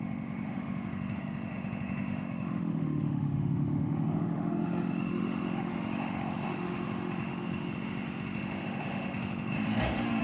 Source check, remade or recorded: remade